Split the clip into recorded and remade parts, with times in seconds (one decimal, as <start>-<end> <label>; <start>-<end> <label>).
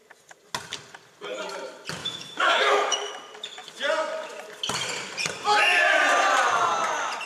0.0-2.0 recorded; 2.0-3.1 remade; 3.1-7.3 recorded